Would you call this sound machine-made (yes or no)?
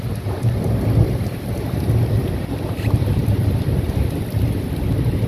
no